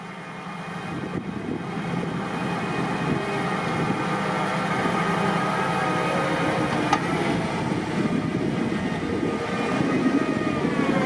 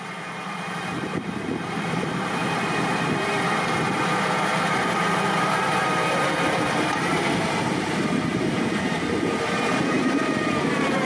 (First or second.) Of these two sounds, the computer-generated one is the second